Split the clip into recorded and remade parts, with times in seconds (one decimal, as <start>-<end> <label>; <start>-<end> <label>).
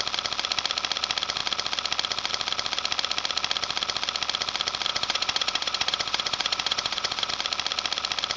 0.0-4.9 recorded; 4.9-7.3 remade; 7.3-8.4 recorded